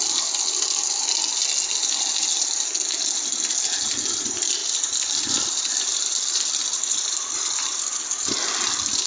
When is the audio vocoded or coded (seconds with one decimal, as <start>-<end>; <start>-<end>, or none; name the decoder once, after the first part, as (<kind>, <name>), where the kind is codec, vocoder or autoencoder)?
4.6-8.0 (vocoder, BigVGAN v2)